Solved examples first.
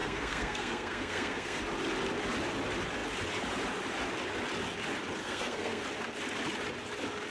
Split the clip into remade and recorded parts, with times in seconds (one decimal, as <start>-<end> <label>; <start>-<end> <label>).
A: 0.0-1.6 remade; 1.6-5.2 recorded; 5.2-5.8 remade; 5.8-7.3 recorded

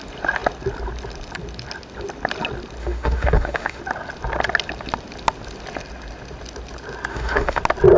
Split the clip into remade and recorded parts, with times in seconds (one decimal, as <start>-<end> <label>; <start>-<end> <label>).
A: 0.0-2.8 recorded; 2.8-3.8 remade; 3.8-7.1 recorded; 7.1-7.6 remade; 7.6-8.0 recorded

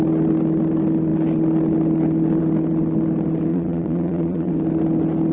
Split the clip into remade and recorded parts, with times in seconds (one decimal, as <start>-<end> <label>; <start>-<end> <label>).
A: 0.0-3.5 recorded; 3.5-4.5 remade; 4.5-5.3 recorded

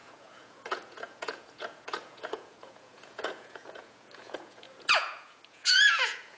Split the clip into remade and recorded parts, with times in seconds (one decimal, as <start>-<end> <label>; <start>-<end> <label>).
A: 0.0-6.4 remade

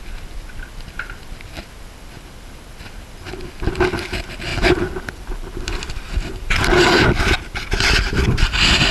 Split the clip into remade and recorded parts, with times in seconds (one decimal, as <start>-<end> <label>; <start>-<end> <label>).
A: 0.0-4.5 recorded; 4.5-6.8 remade; 6.8-8.9 recorded